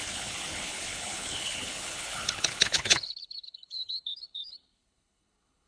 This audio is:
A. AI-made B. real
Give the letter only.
A